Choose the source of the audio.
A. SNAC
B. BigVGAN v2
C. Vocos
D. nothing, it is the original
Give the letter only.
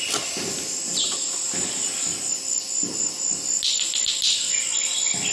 D